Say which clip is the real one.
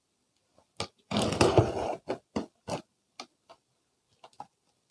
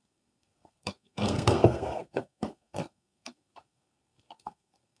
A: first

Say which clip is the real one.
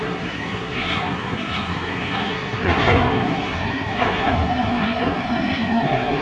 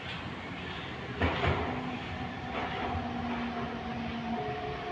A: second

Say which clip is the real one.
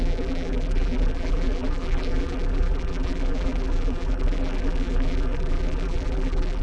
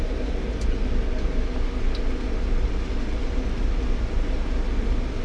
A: second